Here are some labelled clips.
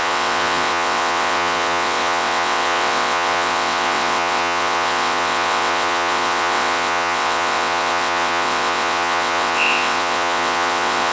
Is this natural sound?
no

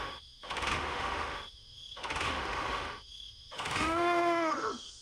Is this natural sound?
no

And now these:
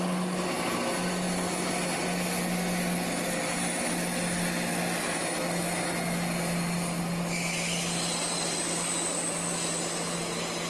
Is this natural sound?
yes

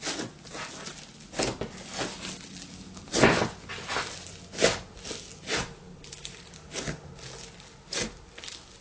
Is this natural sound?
yes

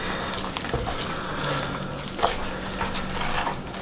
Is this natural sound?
yes